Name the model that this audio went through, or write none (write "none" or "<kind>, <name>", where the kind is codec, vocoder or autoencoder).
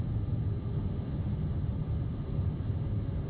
none